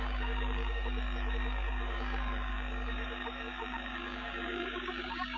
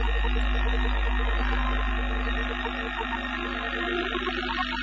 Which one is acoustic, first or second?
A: second